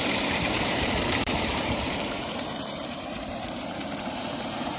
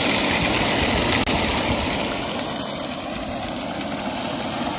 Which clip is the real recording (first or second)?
second